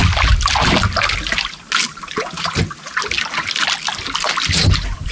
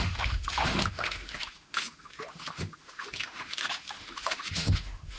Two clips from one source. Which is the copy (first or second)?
second